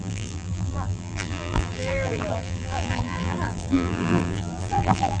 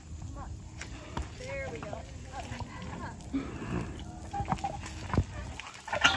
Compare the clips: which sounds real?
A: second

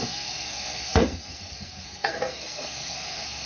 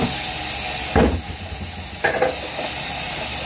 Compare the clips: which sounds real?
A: second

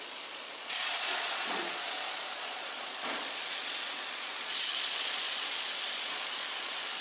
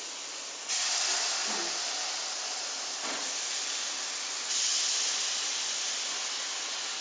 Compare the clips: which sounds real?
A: second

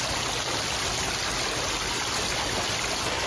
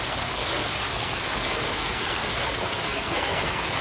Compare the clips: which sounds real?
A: first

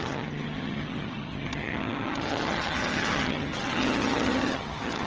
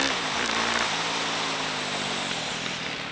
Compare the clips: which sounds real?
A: second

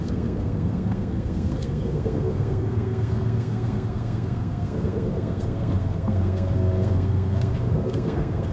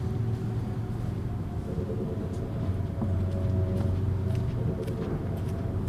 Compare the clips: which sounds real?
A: second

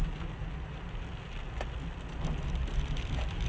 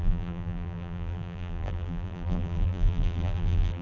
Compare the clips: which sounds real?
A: first